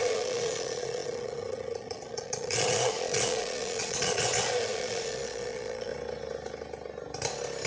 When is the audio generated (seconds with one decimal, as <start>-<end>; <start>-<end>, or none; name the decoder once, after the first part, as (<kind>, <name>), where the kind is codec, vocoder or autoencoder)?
0.0-5.9 (vocoder, Vocos)